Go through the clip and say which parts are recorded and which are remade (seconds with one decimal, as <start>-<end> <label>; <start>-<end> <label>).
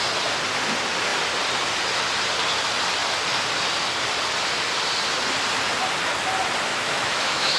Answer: 0.0-6.7 recorded; 6.7-7.6 remade